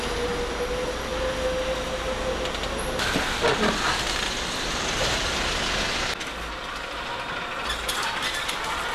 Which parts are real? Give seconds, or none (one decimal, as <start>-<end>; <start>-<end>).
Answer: 0.0-8.9